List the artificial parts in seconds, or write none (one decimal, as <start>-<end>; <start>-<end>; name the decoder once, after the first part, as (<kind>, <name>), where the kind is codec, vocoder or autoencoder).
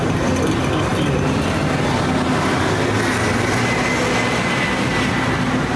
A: none